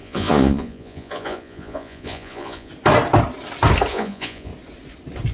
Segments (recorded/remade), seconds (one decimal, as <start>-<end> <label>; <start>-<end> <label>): 0.0-2.7 remade; 2.7-3.9 recorded; 3.9-4.5 remade; 4.5-5.3 recorded